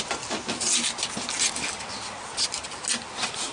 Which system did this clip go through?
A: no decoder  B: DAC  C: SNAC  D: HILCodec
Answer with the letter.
A